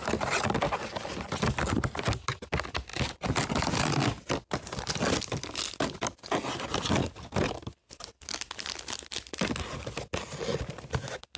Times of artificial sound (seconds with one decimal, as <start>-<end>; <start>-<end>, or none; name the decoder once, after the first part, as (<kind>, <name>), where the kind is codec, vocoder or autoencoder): none